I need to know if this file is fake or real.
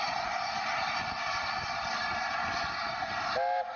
real